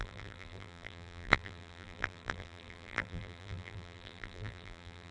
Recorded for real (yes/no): no